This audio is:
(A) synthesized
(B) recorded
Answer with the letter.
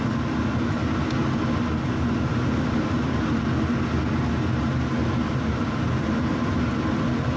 B